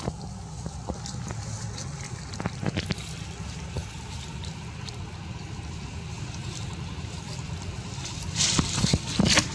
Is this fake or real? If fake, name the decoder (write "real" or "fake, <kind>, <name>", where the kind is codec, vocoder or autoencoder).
real